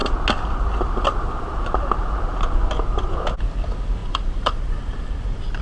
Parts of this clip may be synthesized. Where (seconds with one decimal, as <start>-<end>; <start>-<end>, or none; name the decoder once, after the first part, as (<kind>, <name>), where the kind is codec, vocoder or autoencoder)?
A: 4.0-5.6 (vocoder, BigVGAN v2)